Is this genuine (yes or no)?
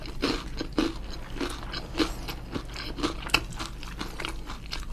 yes